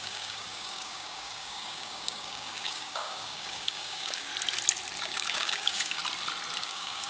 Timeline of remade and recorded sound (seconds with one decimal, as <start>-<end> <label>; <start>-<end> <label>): 0.0-4.3 remade; 4.3-5.0 recorded; 5.0-6.0 remade; 6.0-6.6 recorded; 6.6-7.1 remade